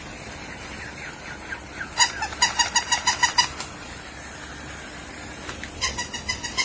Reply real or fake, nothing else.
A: real